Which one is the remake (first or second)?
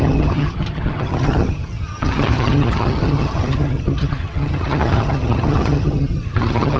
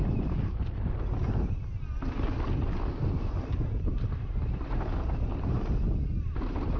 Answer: first